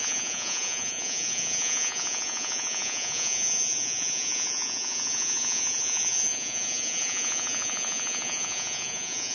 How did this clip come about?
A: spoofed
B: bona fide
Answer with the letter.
A